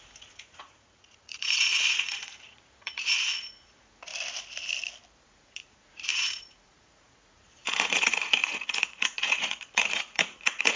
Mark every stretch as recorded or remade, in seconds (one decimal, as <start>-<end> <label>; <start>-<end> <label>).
0.0-4.1 remade; 4.1-5.3 recorded; 5.3-10.8 remade